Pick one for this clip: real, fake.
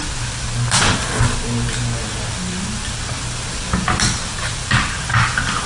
real